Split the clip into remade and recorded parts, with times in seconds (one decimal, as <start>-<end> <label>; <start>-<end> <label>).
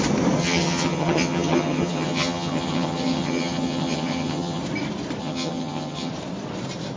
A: 0.0-0.4 recorded; 0.4-4.6 remade; 4.6-5.2 recorded; 5.2-6.1 remade; 6.1-7.0 recorded